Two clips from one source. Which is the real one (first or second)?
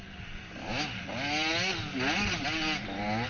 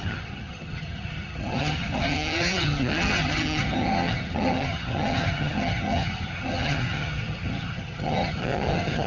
first